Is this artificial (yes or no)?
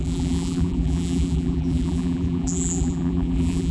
yes